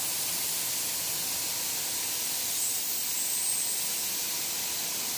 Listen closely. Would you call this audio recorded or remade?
recorded